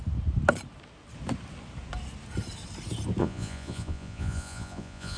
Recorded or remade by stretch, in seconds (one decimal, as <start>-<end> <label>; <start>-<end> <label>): 0.0-3.2 recorded; 3.2-5.2 remade